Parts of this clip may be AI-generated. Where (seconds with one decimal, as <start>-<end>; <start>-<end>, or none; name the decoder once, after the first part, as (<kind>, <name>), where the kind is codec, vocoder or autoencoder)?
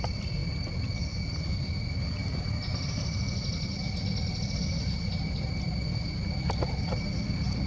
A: none